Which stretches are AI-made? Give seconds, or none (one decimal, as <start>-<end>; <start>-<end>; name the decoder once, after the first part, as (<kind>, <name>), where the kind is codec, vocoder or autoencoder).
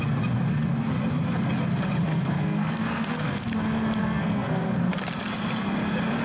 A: 2.1-3.3 (codec, SNAC); 4.0-4.9